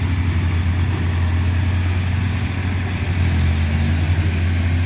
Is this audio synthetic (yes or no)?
no